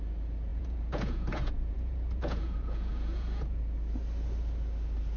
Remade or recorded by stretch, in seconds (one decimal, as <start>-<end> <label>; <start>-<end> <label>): 0.0-0.5 recorded; 0.5-3.6 remade; 3.6-5.2 recorded